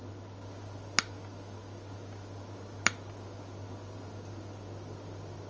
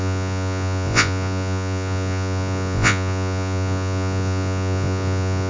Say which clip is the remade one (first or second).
second